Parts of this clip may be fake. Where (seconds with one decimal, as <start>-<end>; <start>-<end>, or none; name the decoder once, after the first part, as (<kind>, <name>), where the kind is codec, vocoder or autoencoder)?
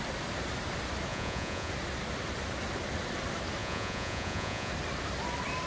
1.1-1.7 (vocoder, Vocos); 3.6-4.7